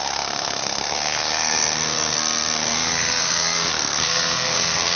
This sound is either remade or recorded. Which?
remade